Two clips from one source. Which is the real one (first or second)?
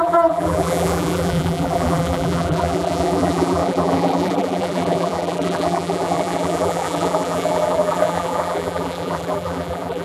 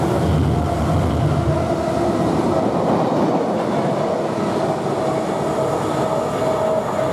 second